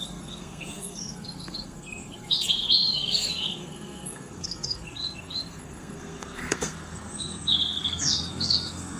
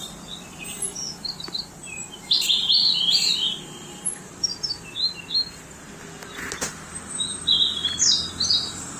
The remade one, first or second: first